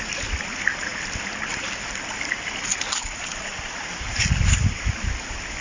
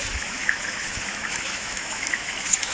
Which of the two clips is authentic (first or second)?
first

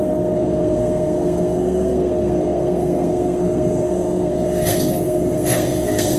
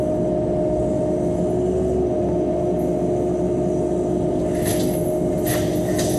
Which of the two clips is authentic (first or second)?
second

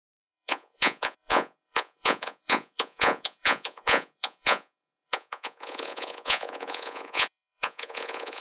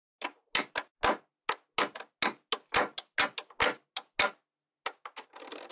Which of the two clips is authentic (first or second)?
second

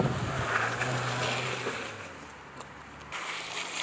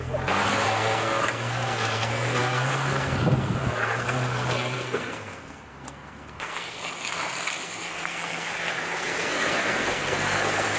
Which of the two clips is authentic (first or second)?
first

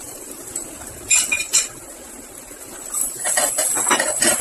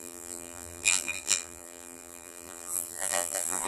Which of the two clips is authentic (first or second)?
first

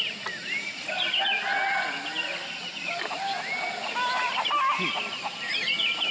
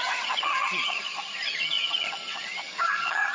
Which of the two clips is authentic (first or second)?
first